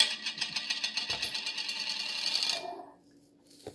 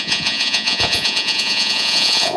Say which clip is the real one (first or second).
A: first